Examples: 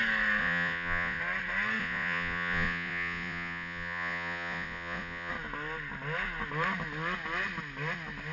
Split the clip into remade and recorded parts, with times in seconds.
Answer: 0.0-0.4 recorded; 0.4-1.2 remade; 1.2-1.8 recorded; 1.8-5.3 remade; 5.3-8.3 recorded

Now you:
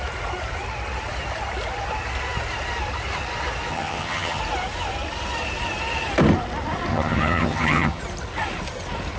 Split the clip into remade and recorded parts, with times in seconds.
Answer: 0.0-3.7 recorded; 3.7-4.4 remade; 4.4-6.9 recorded; 6.9-8.0 remade; 8.0-9.2 recorded

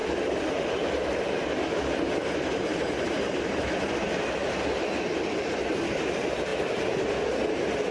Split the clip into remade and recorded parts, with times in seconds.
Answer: 0.0-0.9 remade; 0.9-2.7 recorded; 2.7-5.8 remade; 5.8-7.9 recorded